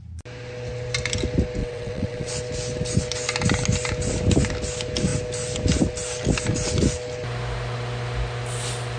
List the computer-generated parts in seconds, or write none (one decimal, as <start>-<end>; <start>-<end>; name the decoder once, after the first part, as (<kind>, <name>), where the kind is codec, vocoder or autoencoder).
1.6-2.3 (vocoder, WaveNeXt)